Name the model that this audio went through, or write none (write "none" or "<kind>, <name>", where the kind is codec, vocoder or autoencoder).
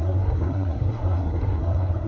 codec, SNAC